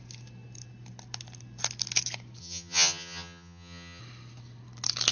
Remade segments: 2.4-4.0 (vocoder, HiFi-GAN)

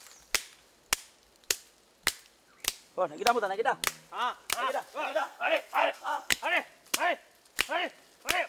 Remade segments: 5.1-6.4 (codec, SNAC)